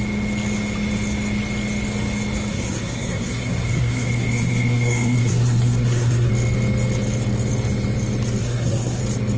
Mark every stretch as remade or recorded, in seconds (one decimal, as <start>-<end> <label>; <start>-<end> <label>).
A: 0.0-2.5 recorded; 2.5-6.3 remade; 6.3-8.4 recorded; 8.4-9.0 remade; 9.0-9.4 recorded